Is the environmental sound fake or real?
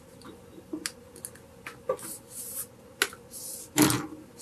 real